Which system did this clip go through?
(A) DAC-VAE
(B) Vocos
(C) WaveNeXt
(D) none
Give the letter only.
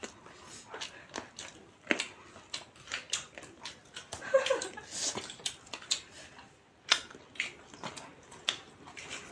D